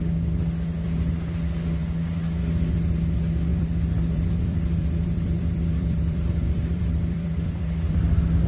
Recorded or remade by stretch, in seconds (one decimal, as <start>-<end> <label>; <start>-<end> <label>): 0.0-3.5 recorded; 3.5-7.9 remade; 7.9-8.5 recorded

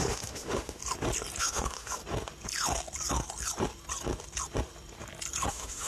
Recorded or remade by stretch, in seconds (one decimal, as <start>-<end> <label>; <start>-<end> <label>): 0.0-0.8 remade; 0.8-1.4 recorded; 1.4-2.0 remade; 2.0-5.5 recorded; 5.5-5.9 remade

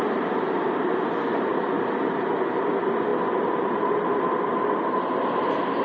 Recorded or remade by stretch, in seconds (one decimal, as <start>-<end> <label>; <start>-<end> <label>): 0.0-5.8 recorded

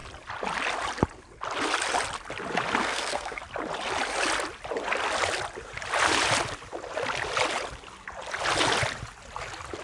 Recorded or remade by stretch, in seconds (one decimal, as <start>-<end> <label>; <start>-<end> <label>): 0.0-2.8 recorded; 2.8-3.4 remade; 3.4-9.8 recorded

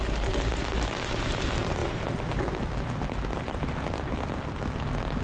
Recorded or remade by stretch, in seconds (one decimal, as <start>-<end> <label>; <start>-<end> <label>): 0.0-1.8 recorded; 1.8-2.6 remade; 2.6-5.2 recorded

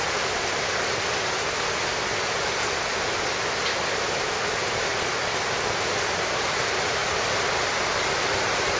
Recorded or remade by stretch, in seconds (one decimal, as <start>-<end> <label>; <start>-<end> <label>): 0.0-7.0 recorded; 7.0-7.6 remade; 7.6-8.8 recorded